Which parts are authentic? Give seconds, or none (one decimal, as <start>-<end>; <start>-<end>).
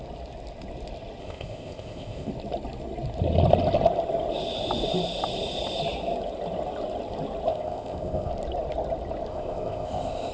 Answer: 0.0-1.2; 2.3-7.5; 8.3-9.3